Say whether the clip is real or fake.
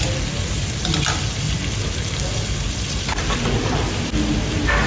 real